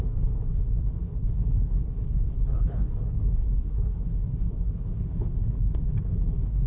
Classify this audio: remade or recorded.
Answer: remade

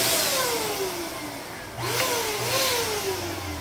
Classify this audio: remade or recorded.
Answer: recorded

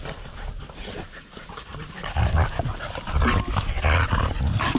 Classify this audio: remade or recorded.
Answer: recorded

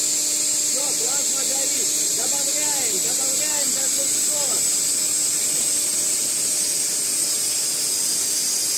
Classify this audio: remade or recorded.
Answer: recorded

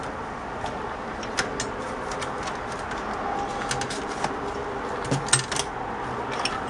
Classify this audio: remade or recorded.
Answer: recorded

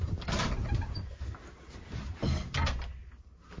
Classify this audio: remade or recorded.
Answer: recorded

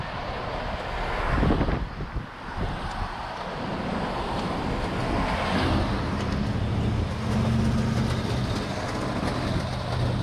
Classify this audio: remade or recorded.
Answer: recorded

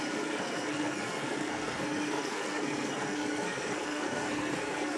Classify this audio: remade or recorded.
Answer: remade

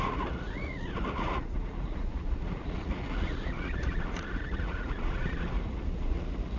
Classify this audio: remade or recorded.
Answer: remade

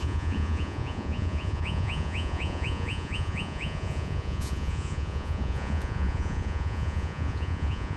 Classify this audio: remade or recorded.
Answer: remade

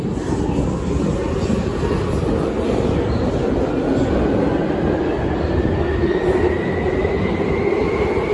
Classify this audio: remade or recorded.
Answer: recorded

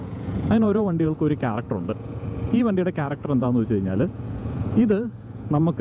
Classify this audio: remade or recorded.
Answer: remade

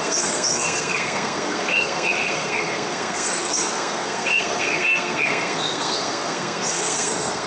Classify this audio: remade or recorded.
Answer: remade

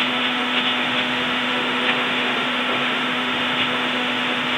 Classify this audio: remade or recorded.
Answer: remade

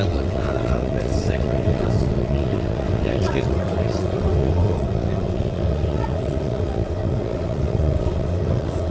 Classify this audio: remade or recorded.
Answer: remade